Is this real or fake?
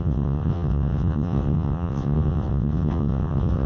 fake